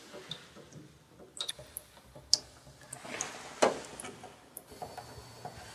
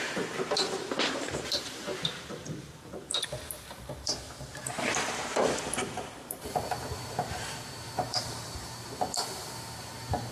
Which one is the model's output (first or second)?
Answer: second